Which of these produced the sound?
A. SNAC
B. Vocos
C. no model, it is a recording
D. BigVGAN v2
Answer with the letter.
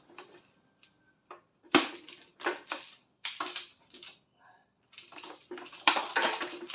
D